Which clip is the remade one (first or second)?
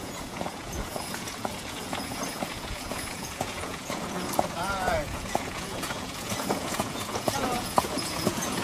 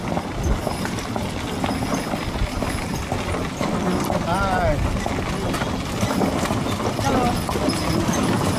first